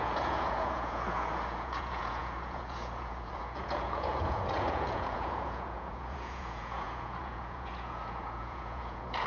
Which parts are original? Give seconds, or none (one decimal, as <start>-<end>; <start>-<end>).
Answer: none